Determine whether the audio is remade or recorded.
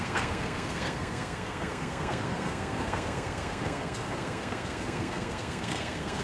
remade